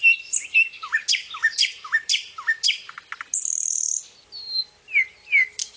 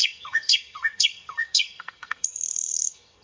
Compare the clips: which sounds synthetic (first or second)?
second